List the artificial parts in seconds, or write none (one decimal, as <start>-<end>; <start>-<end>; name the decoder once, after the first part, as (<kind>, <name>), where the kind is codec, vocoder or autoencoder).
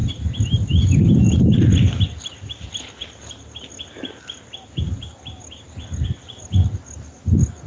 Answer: none